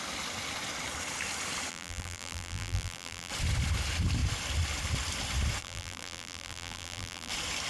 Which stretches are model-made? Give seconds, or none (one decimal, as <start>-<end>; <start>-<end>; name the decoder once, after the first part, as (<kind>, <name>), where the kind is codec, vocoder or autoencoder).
1.7-3.3 (vocoder, BigVGAN v2); 5.6-7.3